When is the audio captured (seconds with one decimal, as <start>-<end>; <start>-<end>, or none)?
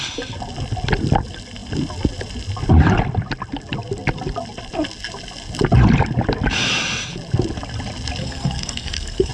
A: 0.0-8.2